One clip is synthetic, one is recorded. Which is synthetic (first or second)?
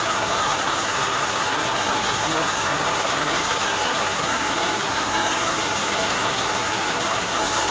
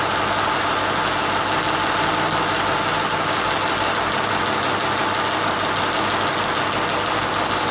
first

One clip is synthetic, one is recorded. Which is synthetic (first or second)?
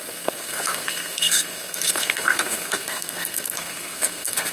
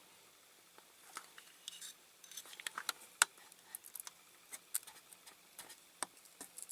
first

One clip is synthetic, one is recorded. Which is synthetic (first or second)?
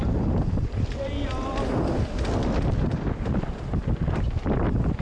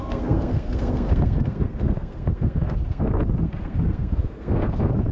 second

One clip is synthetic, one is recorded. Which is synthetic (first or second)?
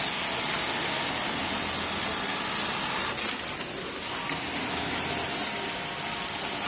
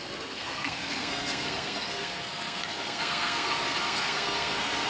second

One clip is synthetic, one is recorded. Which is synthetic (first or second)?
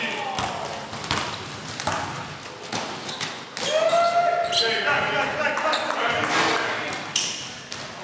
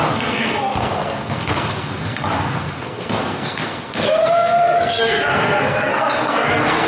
second